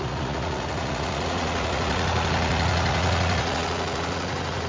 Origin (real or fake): fake